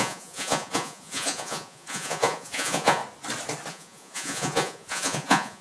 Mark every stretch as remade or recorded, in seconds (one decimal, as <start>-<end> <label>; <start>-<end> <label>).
0.0-3.0 remade; 3.0-3.7 recorded; 3.7-5.6 remade